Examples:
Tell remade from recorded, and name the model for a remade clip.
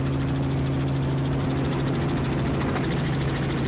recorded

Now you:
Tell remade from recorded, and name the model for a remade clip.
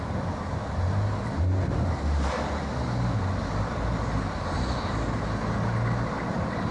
recorded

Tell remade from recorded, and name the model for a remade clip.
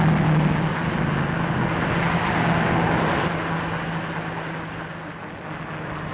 recorded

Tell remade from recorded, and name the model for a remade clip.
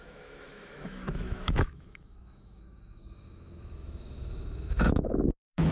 remade, autoencoder, DAC-VAE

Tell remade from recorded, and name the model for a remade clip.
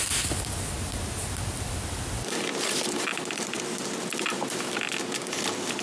recorded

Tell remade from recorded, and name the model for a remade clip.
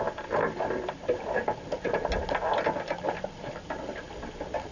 recorded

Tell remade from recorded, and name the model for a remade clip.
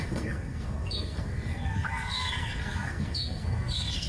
remade, codec, SNAC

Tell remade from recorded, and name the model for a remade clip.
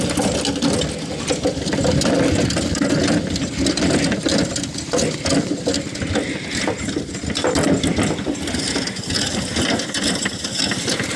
recorded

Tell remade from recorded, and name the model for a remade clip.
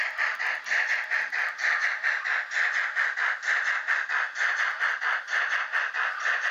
remade, vocoder, BigVGAN v2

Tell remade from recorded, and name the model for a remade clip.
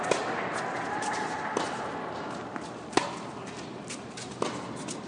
recorded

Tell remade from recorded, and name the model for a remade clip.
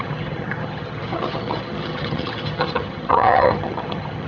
remade, vocoder, HiFi-GAN